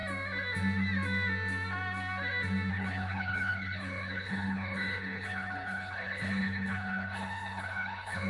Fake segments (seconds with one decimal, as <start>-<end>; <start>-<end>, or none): 2.7-8.3